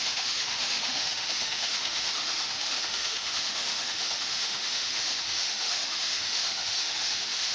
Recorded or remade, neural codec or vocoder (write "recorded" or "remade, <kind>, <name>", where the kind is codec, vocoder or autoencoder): remade, autoencoder, DAC-VAE